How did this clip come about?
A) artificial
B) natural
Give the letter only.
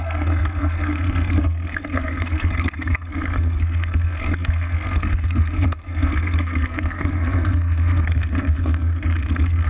A